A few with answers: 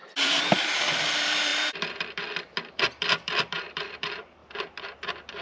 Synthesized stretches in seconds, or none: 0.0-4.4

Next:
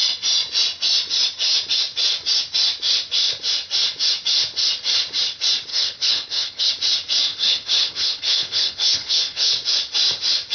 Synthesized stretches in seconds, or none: 5.7-6.7; 7.3-9.5

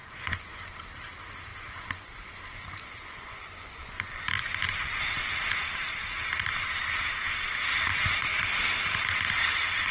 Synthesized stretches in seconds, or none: 0.0-0.6; 1.5-5.2

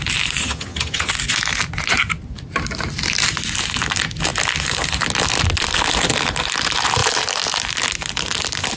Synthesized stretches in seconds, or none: 0.4-1.1